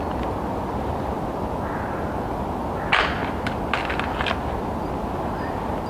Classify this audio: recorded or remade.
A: recorded